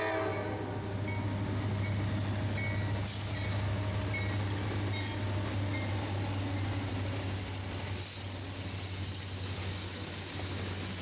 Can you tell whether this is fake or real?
real